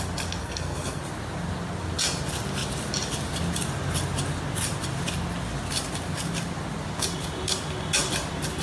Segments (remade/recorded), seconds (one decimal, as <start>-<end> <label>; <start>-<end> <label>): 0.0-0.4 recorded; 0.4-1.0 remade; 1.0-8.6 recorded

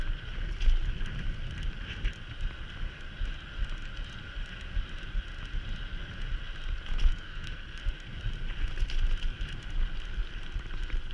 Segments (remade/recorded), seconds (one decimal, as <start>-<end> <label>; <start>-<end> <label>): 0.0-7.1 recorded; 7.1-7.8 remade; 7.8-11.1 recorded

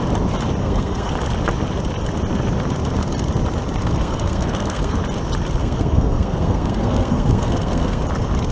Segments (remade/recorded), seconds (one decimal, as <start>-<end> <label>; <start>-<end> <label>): 0.0-0.6 recorded; 0.6-1.1 remade; 1.1-3.8 recorded; 3.8-5.0 remade; 5.0-5.6 recorded; 5.6-8.0 remade; 8.0-8.5 recorded

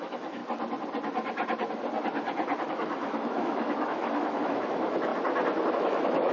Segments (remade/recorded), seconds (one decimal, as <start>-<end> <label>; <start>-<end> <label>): 0.0-0.4 remade; 0.4-2.7 recorded; 2.7-5.1 remade; 5.1-5.7 recorded; 5.7-6.3 remade